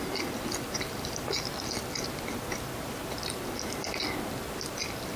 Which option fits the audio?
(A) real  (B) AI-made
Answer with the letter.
A